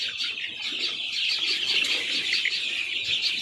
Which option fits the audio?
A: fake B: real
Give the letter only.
B